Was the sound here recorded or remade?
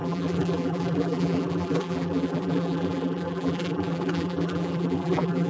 remade